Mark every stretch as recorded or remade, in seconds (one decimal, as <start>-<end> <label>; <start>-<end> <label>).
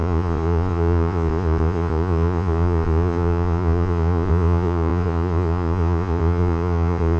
0.0-7.2 remade